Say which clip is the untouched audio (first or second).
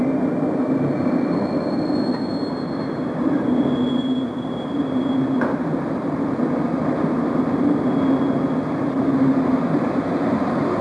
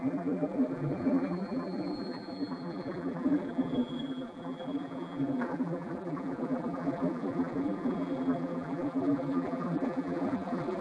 first